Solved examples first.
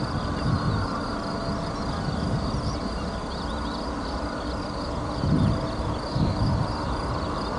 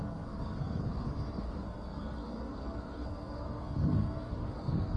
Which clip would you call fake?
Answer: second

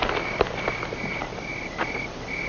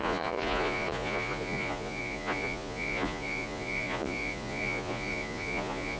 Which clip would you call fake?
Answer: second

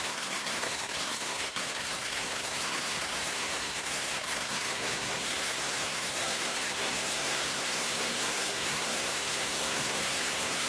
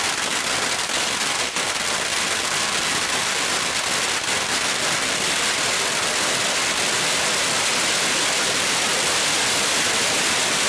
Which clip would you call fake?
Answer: first